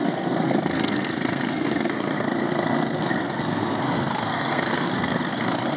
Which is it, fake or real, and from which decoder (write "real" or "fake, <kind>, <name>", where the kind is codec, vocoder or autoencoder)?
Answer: fake, codec, SNAC